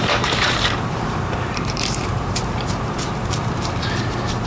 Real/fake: fake